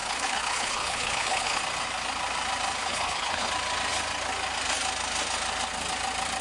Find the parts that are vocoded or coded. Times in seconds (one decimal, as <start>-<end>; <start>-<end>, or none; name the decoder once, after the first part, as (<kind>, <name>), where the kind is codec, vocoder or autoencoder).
0.0-1.6 (codec, HILCodec); 2.8-3.5